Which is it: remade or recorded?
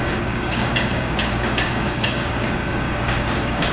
remade